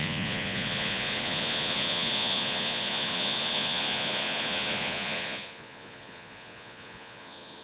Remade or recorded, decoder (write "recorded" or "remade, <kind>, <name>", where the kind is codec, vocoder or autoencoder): remade, vocoder, Vocos